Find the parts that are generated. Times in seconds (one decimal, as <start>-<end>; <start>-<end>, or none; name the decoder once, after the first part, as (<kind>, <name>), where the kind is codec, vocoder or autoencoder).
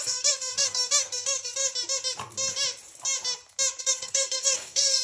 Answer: 0.0-1.6 (codec, SNAC); 3.8-5.0